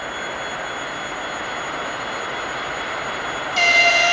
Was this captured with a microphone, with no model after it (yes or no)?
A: yes